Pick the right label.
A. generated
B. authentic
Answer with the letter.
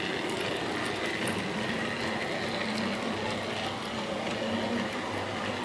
B